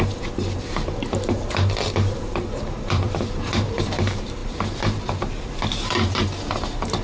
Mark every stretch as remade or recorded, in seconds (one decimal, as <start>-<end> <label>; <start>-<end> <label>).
0.0-7.0 remade